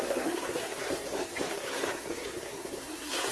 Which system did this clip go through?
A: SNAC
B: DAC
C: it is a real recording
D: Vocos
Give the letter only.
A